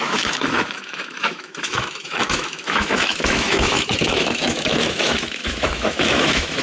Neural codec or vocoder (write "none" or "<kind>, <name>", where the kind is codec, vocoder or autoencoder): autoencoder, DAC-VAE